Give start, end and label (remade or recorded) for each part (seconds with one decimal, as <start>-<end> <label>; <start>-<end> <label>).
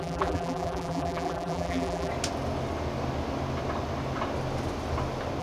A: 0.0-2.1 remade; 2.1-5.4 recorded